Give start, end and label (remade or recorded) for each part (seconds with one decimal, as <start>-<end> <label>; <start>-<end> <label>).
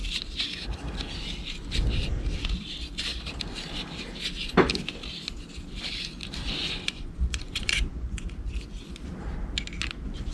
0.0-6.6 recorded; 6.6-8.3 remade; 8.3-10.3 recorded